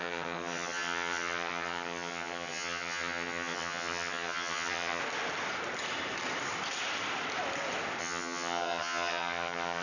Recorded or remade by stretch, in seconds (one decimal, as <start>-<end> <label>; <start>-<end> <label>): 0.0-5.0 remade; 5.0-8.0 recorded; 8.0-9.8 remade